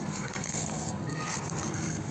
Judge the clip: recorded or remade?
remade